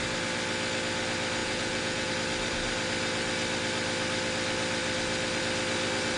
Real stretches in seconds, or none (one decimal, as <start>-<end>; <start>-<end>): 0.0-1.4; 2.1-6.2